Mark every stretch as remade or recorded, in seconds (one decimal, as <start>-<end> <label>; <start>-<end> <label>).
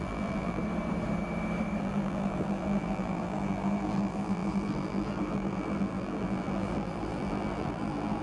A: 0.0-0.6 remade; 0.6-1.8 recorded; 1.8-8.2 remade